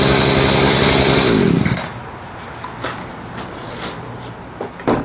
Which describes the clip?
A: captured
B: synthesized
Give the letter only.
A